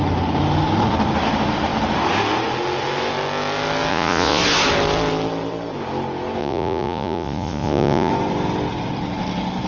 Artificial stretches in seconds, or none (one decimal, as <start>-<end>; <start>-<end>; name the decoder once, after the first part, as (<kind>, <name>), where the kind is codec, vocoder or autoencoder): 3.9-4.4 (vocoder, Vocos); 6.4-8.1

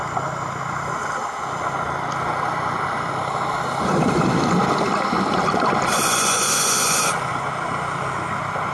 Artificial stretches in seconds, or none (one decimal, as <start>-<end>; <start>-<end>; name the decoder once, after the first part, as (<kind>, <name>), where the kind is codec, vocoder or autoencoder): 6.0-7.1 (vocoder, Vocos)

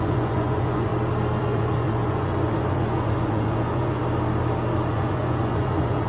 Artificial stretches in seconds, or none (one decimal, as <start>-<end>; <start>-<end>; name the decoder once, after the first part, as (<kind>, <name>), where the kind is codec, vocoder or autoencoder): 0.0-0.9 (vocoder, Vocos); 1.4-4.0; 4.9-6.1

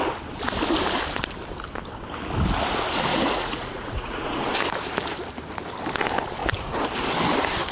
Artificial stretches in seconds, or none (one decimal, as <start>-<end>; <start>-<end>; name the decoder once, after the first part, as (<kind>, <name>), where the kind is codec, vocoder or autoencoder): 3.1-4.5 (vocoder, Vocos)

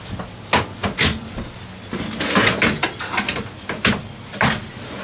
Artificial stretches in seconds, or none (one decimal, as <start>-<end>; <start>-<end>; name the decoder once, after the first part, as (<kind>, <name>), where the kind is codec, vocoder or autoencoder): none